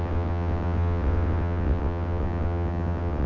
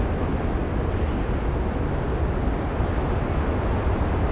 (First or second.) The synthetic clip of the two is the first